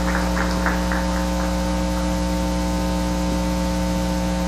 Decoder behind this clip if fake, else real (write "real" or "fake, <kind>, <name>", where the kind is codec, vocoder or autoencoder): real